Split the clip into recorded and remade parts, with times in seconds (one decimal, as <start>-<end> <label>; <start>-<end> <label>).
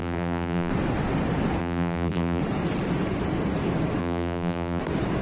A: 0.0-0.7 remade; 0.7-1.6 recorded; 1.6-2.4 remade; 2.4-4.0 recorded; 4.0-4.8 remade; 4.8-5.2 recorded